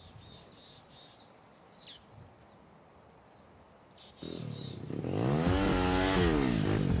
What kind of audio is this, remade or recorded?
recorded